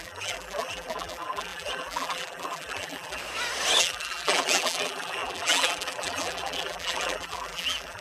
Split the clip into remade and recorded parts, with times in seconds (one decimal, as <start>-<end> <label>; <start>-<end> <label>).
0.0-3.2 remade; 3.2-3.8 recorded; 3.8-8.0 remade